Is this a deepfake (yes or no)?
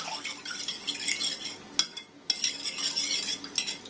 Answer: no